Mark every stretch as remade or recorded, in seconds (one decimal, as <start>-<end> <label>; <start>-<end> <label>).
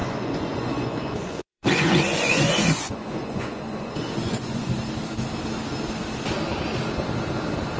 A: 0.0-4.7 remade; 4.7-7.8 recorded